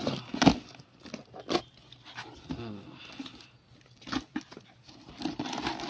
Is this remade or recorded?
recorded